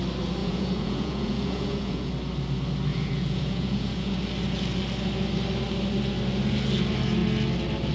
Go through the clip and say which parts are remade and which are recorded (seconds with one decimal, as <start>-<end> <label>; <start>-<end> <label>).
0.0-0.4 recorded; 0.4-2.1 remade; 2.1-2.9 recorded; 2.9-4.1 remade; 4.1-7.9 recorded